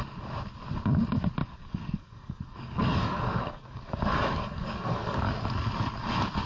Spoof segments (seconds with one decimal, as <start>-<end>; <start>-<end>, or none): 1.4-5.3